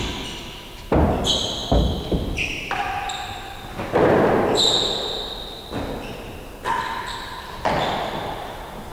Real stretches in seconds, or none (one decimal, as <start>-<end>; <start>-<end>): 0.0-8.9